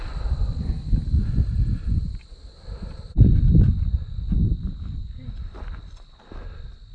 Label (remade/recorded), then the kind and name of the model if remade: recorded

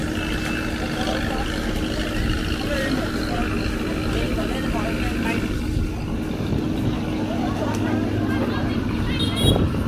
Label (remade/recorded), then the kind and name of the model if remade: recorded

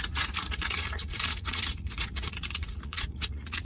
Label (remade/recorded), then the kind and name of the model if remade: remade, vocoder, Vocos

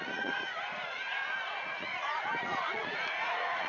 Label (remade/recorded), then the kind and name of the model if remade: remade, vocoder, Vocos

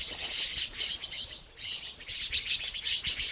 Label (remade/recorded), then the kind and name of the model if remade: remade, vocoder, Vocos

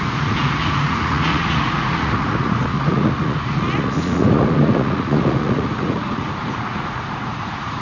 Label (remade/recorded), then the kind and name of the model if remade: remade, vocoder, Vocos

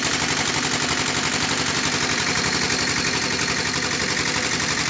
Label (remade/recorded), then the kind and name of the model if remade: recorded